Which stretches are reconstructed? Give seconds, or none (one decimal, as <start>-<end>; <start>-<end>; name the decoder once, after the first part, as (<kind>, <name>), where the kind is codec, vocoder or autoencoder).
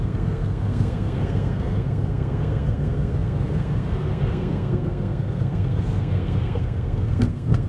0.0-7.7 (codec, SNAC)